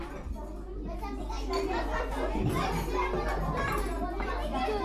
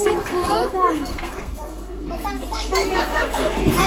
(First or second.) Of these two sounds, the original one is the first